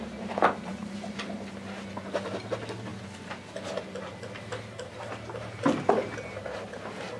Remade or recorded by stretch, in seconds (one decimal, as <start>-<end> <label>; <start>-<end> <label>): 0.0-7.2 recorded

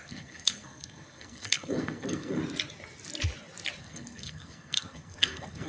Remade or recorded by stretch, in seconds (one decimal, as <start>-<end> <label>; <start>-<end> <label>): 0.0-2.4 remade; 2.4-3.8 recorded; 3.8-5.7 remade

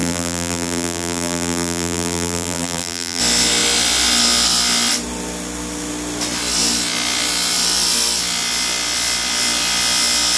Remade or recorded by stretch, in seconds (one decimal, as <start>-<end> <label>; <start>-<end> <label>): 0.0-3.2 remade; 3.2-10.4 recorded

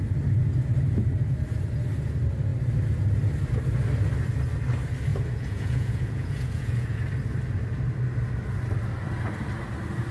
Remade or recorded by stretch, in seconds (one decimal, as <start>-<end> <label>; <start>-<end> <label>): 0.0-5.1 recorded; 5.1-7.0 remade; 7.0-10.1 recorded

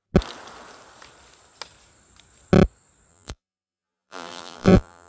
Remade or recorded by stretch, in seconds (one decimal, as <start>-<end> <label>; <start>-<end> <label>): 0.0-3.1 recorded; 3.1-5.1 remade